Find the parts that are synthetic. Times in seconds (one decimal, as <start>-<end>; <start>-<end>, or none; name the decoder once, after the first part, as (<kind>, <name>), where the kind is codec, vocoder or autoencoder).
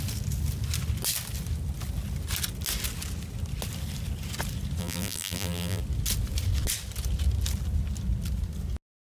4.8-5.8 (vocoder, BigVGAN v2)